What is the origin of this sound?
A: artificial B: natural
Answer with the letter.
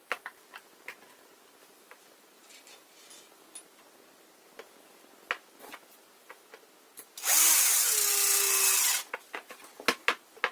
B